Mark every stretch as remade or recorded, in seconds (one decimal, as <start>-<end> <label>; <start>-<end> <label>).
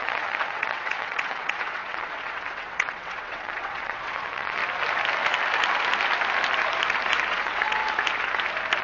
0.0-4.6 remade; 4.6-7.3 recorded; 7.3-7.8 remade; 7.8-8.8 recorded